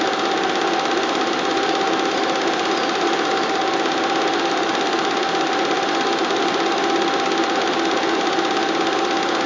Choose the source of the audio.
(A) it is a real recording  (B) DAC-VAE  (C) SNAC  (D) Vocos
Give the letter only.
A